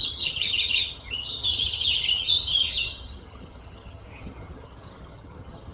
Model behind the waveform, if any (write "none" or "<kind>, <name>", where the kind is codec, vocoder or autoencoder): vocoder, HiFi-GAN